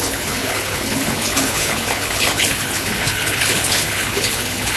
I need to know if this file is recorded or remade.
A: remade